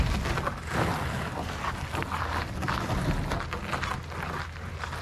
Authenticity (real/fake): real